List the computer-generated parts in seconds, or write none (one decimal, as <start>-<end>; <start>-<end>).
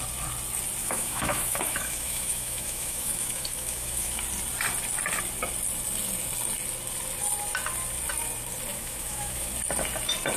0.8-4.2; 8.7-9.5